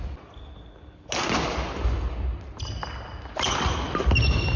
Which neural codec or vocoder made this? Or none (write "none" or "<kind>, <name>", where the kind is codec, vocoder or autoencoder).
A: none